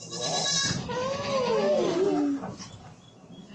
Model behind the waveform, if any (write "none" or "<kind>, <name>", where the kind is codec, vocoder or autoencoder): none